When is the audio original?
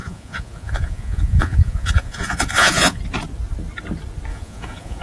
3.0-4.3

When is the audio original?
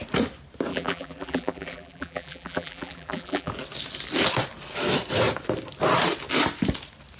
0.0-0.7; 3.5-7.2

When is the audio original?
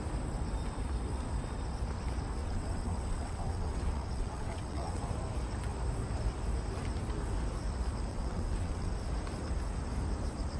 0.0-2.4; 5.0-8.1; 8.9-10.6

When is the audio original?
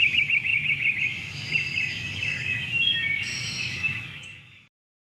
none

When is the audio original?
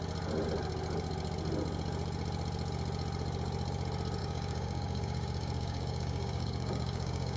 0.0-4.2